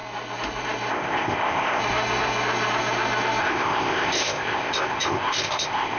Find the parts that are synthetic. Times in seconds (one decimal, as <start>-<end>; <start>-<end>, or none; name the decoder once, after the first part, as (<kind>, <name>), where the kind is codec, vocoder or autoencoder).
0.9-1.8 (codec, ZipCodec); 3.4-6.0